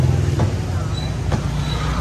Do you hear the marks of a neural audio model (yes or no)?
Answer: no